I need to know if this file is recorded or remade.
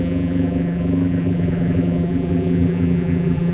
remade